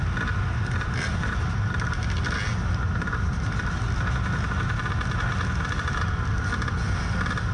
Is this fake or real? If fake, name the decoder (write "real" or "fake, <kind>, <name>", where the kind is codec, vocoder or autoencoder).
real